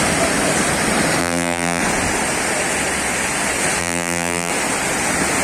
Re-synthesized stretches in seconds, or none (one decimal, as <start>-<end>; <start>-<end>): 1.2-1.8; 3.8-4.5